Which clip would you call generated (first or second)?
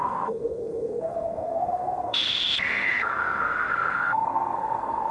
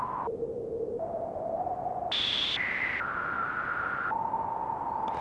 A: first